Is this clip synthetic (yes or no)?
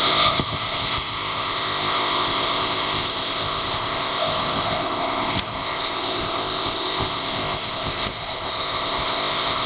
yes